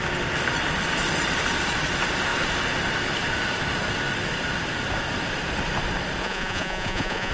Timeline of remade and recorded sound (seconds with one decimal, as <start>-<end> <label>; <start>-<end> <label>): 0.0-6.2 recorded; 6.2-7.3 remade